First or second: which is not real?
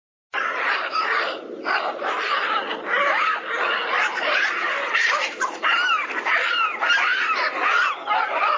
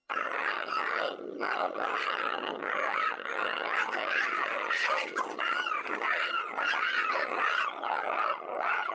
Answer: second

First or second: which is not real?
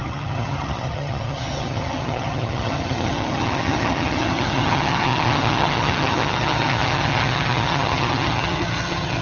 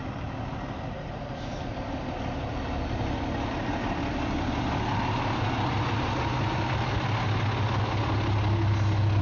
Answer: first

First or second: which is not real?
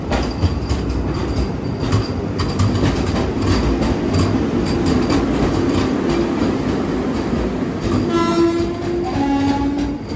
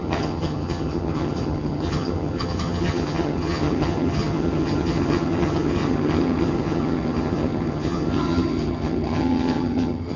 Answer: second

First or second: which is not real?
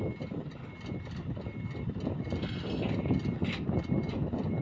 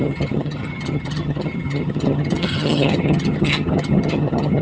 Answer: second